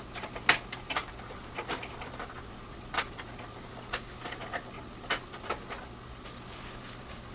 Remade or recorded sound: recorded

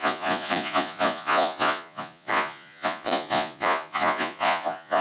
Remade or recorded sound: remade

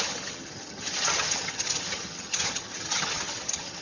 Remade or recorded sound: remade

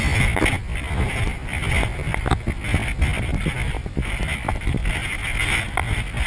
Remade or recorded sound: recorded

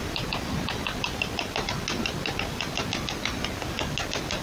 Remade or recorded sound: recorded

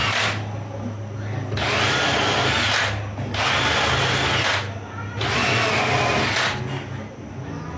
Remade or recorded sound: recorded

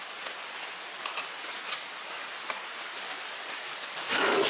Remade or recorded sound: recorded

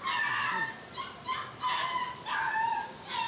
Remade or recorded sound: recorded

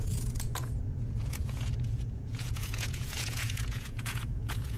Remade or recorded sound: remade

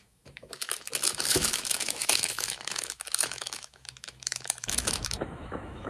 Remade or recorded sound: remade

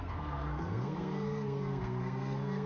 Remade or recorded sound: remade